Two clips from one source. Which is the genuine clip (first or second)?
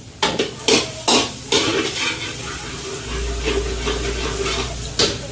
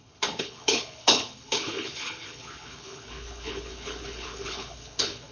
first